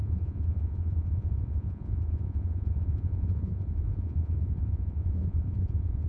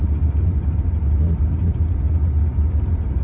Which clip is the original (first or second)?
second